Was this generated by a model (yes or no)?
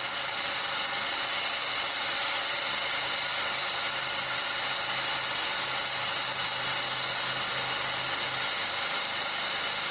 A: no